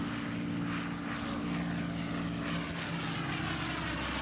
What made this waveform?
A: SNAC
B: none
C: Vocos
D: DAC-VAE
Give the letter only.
B